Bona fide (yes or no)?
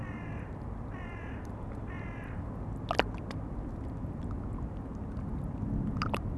yes